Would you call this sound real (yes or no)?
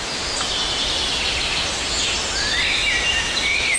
yes